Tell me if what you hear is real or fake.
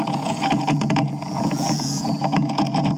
fake